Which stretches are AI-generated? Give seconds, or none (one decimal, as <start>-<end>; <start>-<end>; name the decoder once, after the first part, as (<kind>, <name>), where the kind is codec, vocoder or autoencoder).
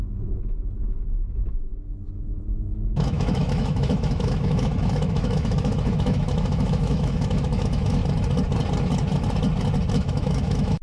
0.0-8.0 (autoencoder, DAC-VAE); 9.9-10.8